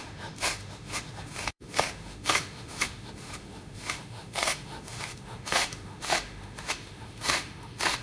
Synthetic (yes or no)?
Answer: yes